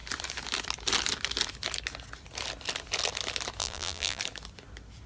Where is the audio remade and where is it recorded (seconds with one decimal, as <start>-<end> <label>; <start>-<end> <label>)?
0.0-3.6 recorded; 3.6-4.2 remade; 4.2-5.1 recorded